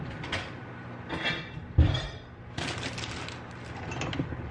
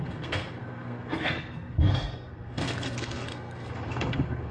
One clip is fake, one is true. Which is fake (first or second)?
second